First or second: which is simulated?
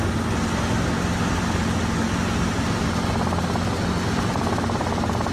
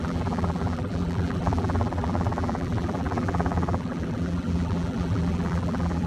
second